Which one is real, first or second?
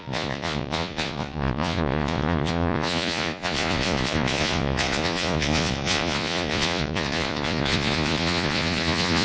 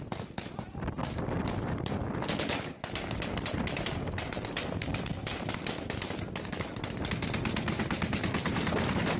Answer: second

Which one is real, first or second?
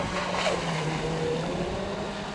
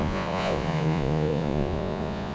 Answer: first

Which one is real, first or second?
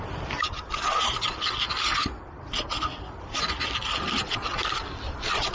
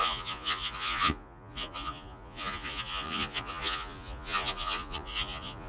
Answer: first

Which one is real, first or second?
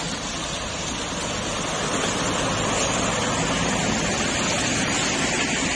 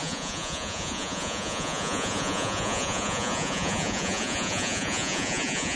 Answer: first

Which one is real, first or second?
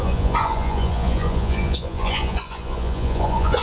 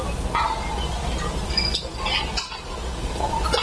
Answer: second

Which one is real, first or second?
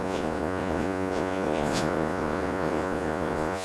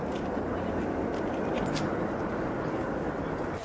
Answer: second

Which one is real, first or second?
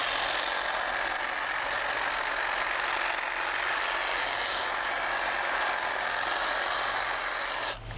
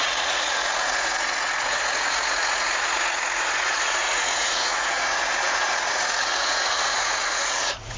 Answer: first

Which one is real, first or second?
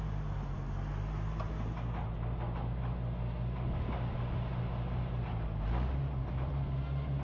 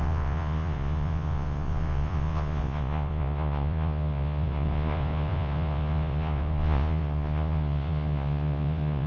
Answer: first